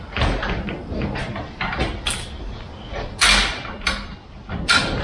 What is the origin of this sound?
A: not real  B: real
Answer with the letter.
B